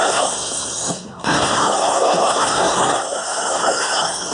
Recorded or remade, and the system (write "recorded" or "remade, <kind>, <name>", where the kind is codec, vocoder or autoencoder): remade, codec, SNAC